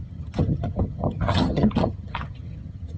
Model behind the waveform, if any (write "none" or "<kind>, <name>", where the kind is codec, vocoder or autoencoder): vocoder, HiFi-GAN